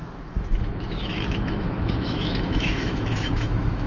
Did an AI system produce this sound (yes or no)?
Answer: yes